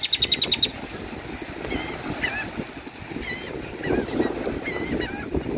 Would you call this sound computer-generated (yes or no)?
no